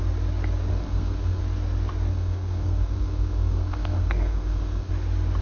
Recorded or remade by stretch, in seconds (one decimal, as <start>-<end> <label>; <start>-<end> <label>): 0.0-0.7 recorded; 0.7-1.4 remade; 1.4-2.1 recorded; 2.1-4.9 remade; 4.9-5.4 recorded